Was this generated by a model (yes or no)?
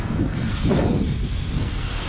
yes